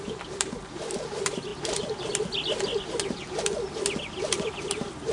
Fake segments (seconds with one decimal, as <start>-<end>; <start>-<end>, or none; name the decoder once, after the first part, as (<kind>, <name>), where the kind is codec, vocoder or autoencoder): 0.0-1.5 (vocoder, BigVGAN v2); 4.5-5.1